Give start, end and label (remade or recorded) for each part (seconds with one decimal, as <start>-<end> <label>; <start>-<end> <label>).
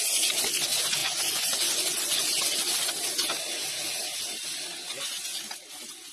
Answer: 0.0-1.0 recorded; 1.0-2.9 remade; 2.9-6.1 recorded